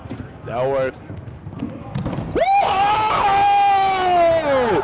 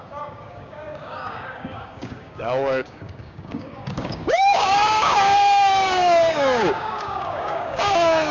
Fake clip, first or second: second